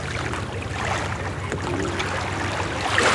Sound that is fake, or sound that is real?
real